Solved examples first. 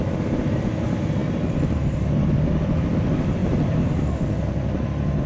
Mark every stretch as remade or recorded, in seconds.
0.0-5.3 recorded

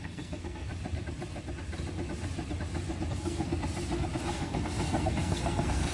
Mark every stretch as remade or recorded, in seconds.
0.0-0.7 remade; 0.7-3.1 recorded; 3.1-3.5 remade; 3.5-4.2 recorded; 4.2-5.9 remade

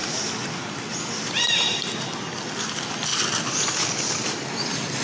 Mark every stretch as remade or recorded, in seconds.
0.0-5.0 recorded

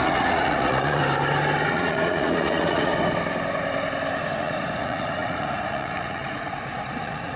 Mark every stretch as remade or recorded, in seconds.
0.0-1.0 remade; 1.0-1.7 recorded; 1.7-2.9 remade; 2.9-4.4 recorded; 4.4-7.4 remade